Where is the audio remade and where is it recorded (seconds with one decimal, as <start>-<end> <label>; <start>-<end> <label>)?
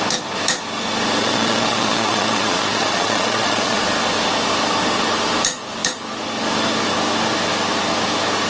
0.0-1.2 recorded; 1.2-3.8 remade; 3.8-8.5 recorded